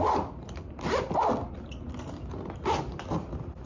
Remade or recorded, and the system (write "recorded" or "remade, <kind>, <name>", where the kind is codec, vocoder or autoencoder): recorded